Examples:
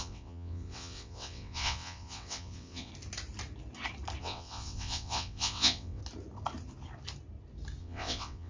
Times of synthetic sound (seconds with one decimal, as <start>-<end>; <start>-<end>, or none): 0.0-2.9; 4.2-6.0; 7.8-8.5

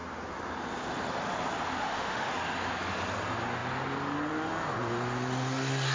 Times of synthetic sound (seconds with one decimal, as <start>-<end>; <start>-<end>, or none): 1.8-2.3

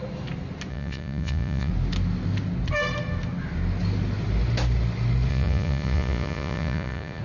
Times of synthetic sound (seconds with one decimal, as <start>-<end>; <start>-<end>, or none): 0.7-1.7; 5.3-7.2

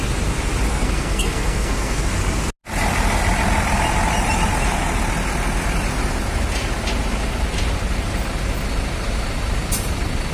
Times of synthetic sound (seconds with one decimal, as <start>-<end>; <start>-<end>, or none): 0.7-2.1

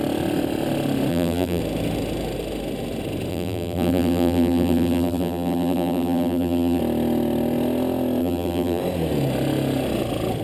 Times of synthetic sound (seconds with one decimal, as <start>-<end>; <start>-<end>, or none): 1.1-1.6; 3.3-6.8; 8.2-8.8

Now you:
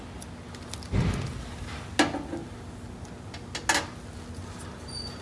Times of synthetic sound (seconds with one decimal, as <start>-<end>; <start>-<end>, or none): none

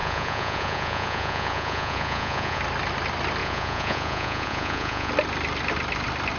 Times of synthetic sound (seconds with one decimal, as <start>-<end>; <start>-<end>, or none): 0.0-2.6; 3.4-5.1

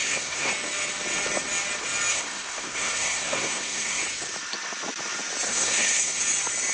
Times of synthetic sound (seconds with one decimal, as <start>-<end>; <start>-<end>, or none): 0.0-0.5; 2.1-4.0; 5.5-6.2